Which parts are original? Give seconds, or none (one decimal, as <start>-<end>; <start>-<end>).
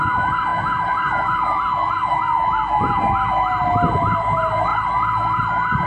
0.0-5.9